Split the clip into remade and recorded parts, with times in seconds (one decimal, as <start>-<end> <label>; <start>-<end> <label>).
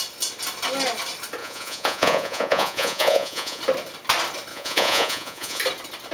0.0-1.4 recorded; 1.4-3.6 remade; 3.6-4.5 recorded; 4.5-5.6 remade; 5.6-6.1 recorded